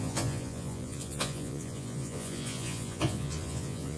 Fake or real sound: fake